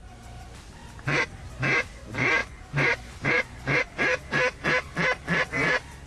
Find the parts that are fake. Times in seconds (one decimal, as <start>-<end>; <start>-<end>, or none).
2.4-3.8